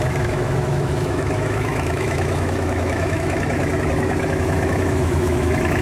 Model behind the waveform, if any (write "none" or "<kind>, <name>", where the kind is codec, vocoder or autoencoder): autoencoder, DAC-VAE